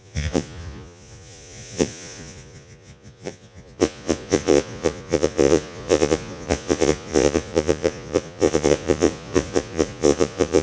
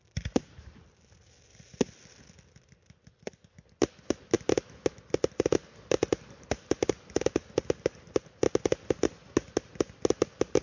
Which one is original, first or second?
second